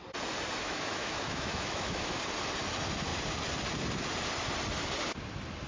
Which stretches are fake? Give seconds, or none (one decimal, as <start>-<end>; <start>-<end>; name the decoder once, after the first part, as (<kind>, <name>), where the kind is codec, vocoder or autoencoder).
0.6-2.2 (autoencoder, DAC-VAE)